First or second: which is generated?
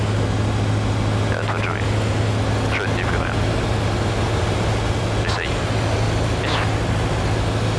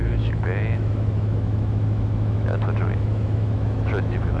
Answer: second